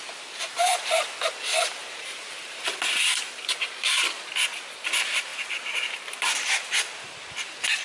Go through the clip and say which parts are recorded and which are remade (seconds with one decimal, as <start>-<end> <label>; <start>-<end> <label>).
0.0-1.8 recorded; 1.8-3.9 remade; 3.9-5.3 recorded; 5.3-6.1 remade; 6.1-7.8 recorded